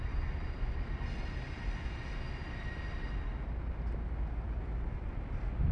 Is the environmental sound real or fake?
real